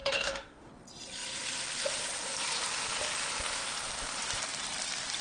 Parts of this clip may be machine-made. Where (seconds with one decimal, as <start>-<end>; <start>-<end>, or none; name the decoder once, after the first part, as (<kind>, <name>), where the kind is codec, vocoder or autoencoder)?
0.0-0.7 (autoencoder, DAC-VAE)